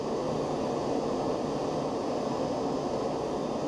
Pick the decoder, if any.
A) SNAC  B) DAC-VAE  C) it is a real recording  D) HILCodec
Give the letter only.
C